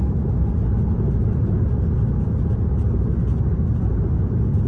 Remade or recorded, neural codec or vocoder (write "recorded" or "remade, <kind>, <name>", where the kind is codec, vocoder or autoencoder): recorded